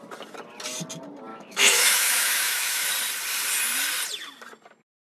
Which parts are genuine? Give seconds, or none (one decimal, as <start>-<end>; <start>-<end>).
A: 0.0-1.3; 2.9-5.1